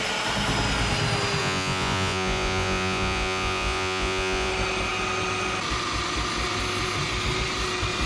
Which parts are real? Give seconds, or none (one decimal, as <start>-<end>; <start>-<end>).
0.0-1.4; 4.5-8.1